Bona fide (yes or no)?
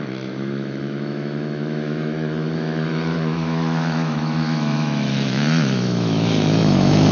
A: no